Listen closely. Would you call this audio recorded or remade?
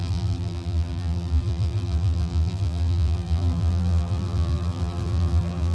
remade